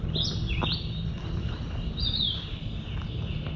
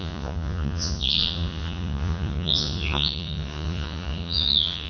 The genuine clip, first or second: first